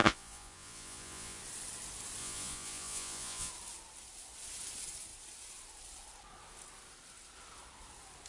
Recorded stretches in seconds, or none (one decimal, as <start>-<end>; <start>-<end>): 1.4-2.2; 3.5-8.3